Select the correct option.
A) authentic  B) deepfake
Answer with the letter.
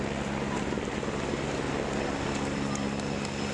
A